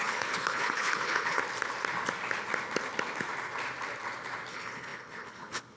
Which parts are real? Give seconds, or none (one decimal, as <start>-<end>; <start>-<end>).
1.4-4.5